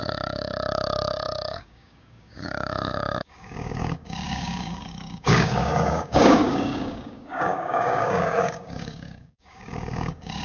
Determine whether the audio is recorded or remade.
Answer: remade